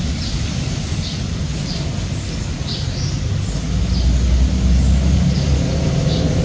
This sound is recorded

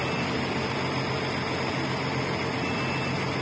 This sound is recorded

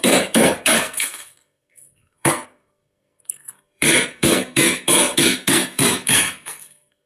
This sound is remade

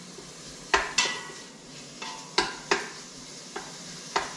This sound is recorded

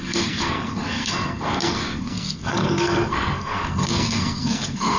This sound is remade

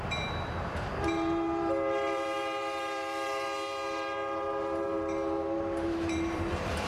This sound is remade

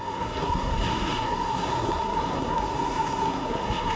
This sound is remade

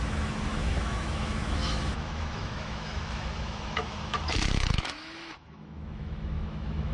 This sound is remade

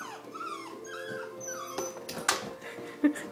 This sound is recorded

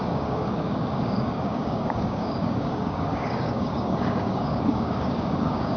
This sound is remade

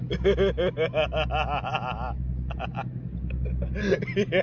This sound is recorded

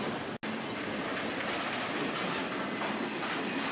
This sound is recorded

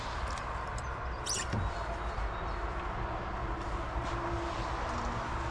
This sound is recorded